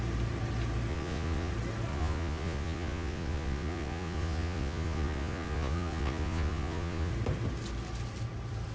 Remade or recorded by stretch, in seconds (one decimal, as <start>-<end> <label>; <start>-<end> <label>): 0.0-0.9 recorded; 0.9-1.5 remade; 1.5-1.9 recorded; 1.9-7.1 remade; 7.1-8.7 recorded